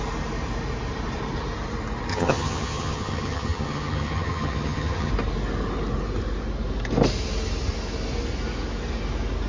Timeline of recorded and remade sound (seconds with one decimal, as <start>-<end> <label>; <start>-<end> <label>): 0.0-2.1 recorded; 2.1-5.1 remade; 5.1-9.5 recorded